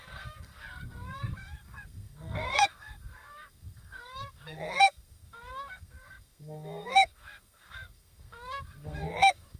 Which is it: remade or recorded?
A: remade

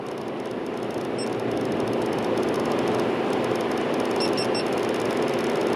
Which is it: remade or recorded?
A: recorded